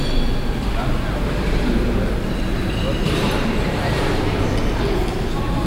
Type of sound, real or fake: real